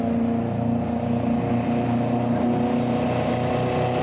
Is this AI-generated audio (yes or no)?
no